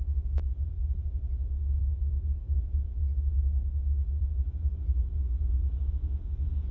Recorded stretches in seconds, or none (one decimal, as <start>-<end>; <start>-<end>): 0.0-1.8; 2.6-6.7